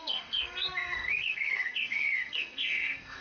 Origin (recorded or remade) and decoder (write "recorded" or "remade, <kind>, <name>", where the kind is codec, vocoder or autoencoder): remade, codec, SNAC